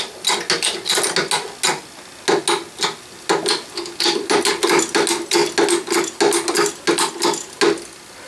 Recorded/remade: recorded